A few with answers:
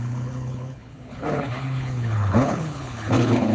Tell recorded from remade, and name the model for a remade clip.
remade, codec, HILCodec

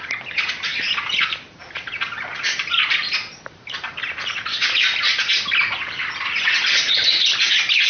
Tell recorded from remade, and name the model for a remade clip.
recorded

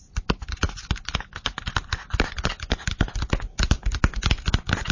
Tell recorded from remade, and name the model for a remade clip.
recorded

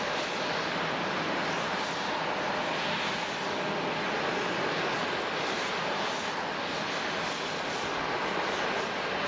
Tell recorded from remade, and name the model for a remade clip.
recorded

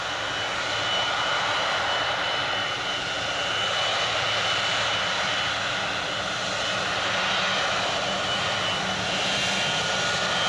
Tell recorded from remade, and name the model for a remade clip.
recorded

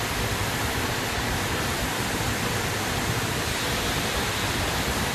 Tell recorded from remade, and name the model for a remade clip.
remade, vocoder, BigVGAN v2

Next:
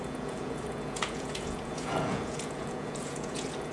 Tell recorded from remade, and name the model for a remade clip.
remade, vocoder, Vocos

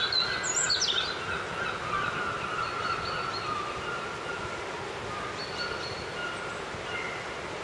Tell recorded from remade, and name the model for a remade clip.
recorded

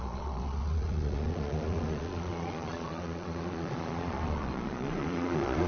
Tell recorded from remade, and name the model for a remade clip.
remade, vocoder, Vocos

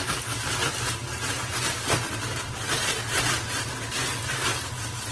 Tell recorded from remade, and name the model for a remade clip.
recorded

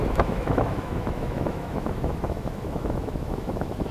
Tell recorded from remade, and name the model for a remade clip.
remade, autoencoder, DAC-VAE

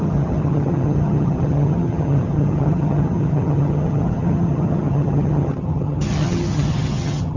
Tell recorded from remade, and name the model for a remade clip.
remade, vocoder, HiFi-GAN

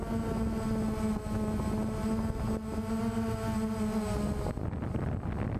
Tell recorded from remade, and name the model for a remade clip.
recorded